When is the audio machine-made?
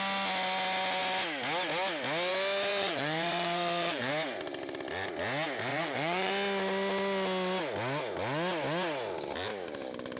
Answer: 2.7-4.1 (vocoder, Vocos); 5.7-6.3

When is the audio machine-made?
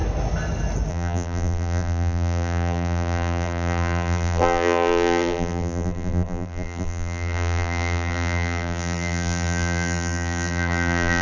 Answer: 0.9-11.2 (vocoder, BigVGAN v2)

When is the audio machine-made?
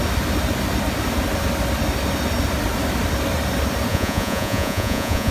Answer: 3.9-5.3 (vocoder, Vocos)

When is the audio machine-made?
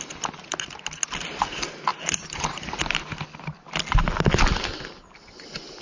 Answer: none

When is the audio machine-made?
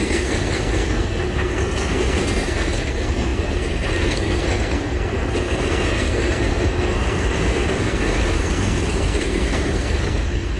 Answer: 0.0-10.6 (codec, SNAC)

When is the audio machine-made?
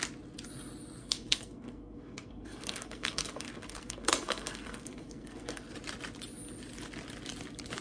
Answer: 1.0-5.7 (codec, SNAC)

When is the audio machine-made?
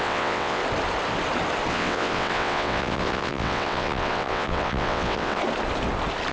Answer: 0.0-0.6 (vocoder, WaveNeXt); 1.7-5.4